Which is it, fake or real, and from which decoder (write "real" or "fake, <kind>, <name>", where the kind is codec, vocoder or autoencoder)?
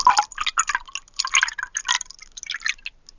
real